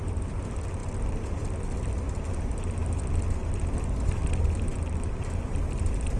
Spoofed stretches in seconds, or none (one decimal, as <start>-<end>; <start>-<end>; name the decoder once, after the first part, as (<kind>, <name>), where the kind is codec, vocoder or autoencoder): none